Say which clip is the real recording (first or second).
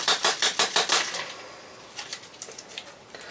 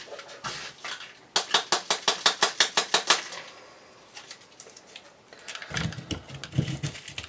second